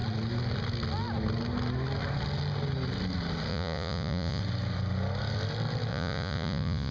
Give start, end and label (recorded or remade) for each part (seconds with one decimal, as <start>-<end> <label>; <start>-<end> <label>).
0.0-3.5 recorded; 3.5-4.4 remade; 4.4-5.9 recorded; 5.9-6.9 remade